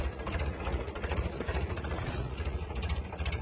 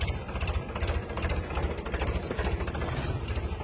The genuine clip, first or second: second